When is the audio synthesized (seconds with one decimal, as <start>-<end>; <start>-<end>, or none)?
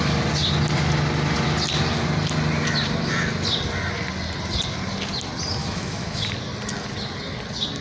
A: 5.6-6.3